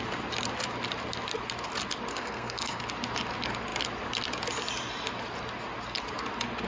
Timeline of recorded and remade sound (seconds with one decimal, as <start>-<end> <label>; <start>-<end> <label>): 0.0-2.1 recorded; 2.1-2.8 remade; 2.8-6.7 recorded